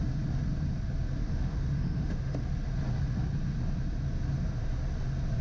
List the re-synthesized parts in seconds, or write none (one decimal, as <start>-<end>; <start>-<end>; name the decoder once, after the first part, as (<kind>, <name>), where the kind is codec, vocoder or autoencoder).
1.2-2.4 (autoencoder, DAC-VAE)